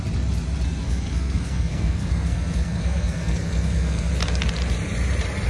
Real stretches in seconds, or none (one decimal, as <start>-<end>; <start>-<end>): 0.0-0.8; 4.1-5.5